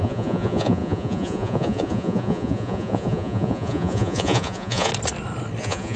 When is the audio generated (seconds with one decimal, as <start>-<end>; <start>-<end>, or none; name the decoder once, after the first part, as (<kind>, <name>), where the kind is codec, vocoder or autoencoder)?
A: 0.0-4.9 (vocoder, Vocos); 5.6-6.0